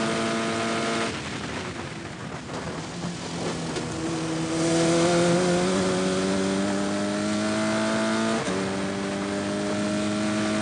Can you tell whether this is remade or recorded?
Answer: recorded